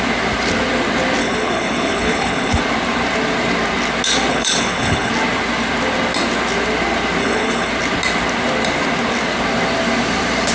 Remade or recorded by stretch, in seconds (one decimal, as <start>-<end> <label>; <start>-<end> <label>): 0.0-1.2 recorded; 1.2-2.6 remade; 2.6-4.3 recorded; 4.3-5.1 remade; 5.1-7.2 recorded; 7.2-7.7 remade; 7.7-10.5 recorded